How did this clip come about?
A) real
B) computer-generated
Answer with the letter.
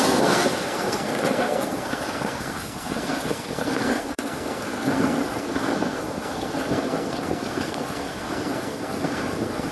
B